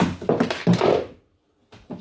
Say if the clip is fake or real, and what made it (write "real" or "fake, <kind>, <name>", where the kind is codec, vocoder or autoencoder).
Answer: real